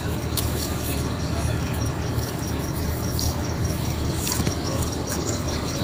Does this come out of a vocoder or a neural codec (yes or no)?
yes